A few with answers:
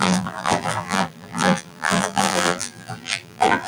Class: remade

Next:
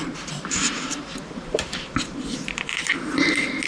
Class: remade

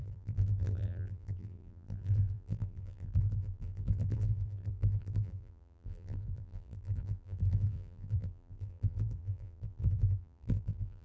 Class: remade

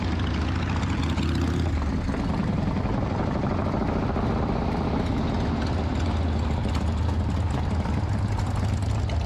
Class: recorded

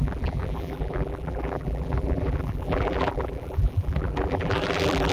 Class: remade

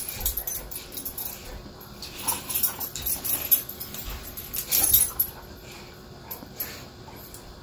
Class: remade